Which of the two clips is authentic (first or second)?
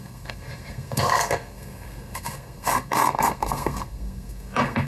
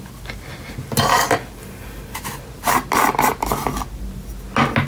second